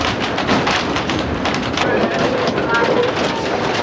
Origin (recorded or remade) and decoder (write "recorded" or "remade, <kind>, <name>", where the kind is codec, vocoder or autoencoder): recorded